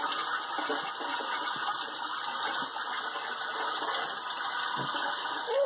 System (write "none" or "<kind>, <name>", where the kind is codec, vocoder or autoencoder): none